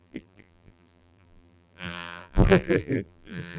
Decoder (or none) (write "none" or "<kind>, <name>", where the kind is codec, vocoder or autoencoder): vocoder, BigVGAN v2